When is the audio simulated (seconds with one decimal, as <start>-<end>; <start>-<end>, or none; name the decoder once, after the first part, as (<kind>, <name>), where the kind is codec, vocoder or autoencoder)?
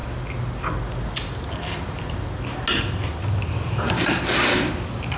none